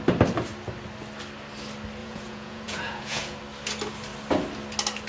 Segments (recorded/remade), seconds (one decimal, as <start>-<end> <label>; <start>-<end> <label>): 0.0-2.0 recorded; 2.0-3.4 remade; 3.4-5.1 recorded